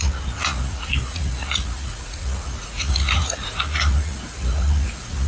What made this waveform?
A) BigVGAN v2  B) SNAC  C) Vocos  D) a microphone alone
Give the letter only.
C